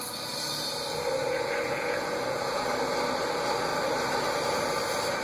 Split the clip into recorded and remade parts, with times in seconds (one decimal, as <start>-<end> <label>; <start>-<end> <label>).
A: 0.0-1.2 recorded; 1.2-2.7 remade; 2.7-5.2 recorded